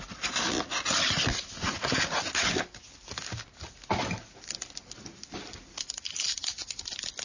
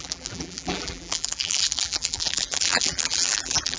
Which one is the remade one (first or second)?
second